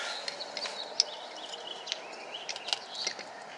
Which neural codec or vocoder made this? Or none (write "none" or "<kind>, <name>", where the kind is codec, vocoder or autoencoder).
none